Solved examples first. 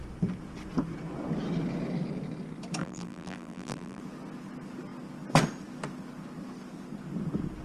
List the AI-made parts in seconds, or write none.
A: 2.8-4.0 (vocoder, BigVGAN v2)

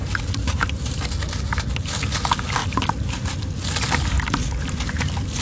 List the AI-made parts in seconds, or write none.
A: 0.4-1.1 (vocoder, BigVGAN v2); 2.6-3.4

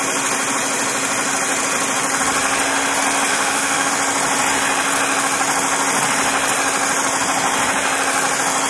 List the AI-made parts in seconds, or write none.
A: 3.3-3.9 (autoencoder, DAC-VAE)

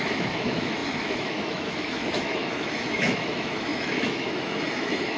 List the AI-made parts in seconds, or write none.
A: 0.0-5.2 (autoencoder, DAC-VAE)

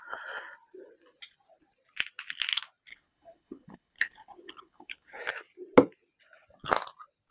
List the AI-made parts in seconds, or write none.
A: 2.9-5.2 (codec, HILCodec)

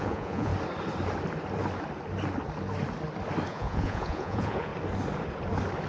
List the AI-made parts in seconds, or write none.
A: 0.0-0.5 (vocoder, Vocos); 3.5-4.7